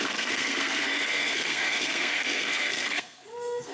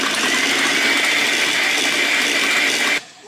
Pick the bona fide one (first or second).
second